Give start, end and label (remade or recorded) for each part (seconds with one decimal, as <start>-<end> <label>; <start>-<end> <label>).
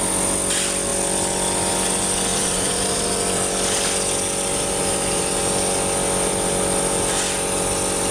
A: 0.0-2.3 recorded; 2.3-3.1 remade; 3.1-4.5 recorded; 4.5-5.4 remade; 5.4-8.1 recorded